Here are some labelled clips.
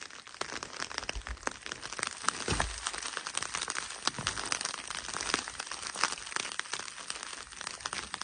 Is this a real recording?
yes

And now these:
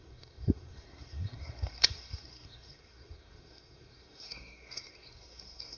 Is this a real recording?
no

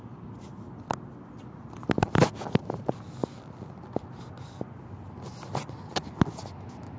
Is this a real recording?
yes